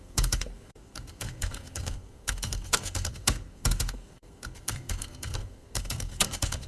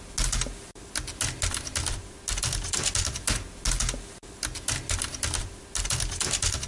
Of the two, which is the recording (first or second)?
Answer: second